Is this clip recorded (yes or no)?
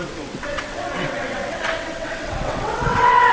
no